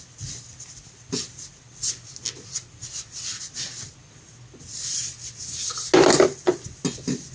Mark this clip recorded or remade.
recorded